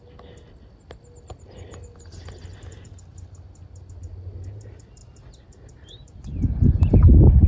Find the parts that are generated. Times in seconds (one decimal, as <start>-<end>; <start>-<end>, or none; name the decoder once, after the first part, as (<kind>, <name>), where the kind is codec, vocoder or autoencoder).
none

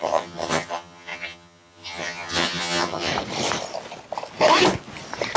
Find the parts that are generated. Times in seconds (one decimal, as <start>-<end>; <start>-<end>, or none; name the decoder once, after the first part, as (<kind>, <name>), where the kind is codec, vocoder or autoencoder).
0.0-3.1 (vocoder, HiFi-GAN)

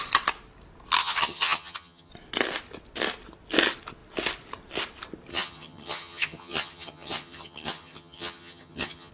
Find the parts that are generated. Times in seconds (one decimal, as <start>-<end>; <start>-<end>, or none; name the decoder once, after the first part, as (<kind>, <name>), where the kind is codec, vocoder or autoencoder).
1.0-2.1 (vocoder, HiFi-GAN); 5.3-9.1

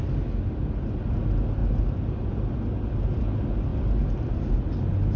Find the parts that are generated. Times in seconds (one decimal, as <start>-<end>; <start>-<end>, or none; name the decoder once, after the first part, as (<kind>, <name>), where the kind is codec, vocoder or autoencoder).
none

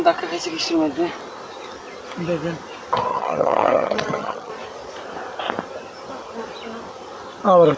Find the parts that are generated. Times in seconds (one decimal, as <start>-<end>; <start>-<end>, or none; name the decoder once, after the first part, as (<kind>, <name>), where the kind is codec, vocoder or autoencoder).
3.1-4.5 (vocoder, HiFi-GAN)

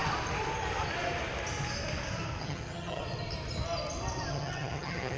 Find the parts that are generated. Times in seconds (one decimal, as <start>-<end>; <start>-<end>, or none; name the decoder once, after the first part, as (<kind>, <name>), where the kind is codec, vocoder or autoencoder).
2.4-3.0 (vocoder, HiFi-GAN); 4.3-5.2

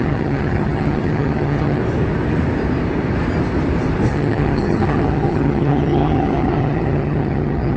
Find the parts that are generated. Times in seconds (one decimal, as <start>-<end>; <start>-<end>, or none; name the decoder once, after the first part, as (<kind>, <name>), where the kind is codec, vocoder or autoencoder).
0.0-1.8 (vocoder, HiFi-GAN); 4.1-7.8